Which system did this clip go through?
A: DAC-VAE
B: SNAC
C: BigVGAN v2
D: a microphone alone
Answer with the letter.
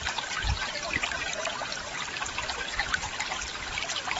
D